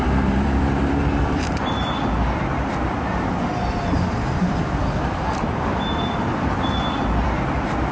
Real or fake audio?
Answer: fake